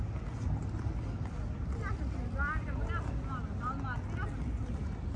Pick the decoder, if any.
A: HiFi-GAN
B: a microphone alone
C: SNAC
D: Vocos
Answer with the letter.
B